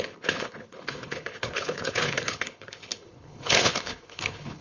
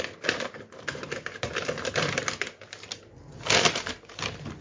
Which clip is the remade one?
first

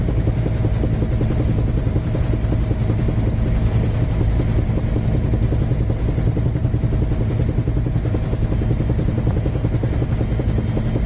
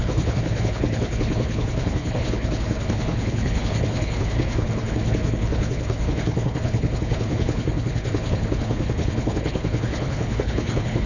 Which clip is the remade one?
second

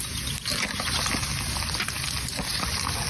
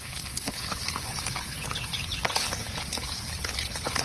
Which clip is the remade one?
second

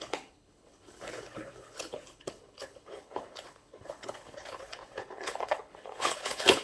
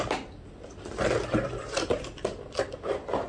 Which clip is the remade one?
first